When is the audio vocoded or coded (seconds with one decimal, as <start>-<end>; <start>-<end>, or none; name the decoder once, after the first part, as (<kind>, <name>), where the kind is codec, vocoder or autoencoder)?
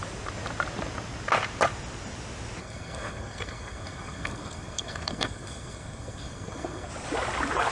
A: 2.6-6.9 (codec, SNAC)